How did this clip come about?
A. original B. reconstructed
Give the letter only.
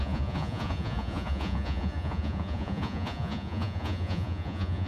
B